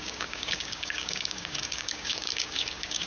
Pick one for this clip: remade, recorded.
remade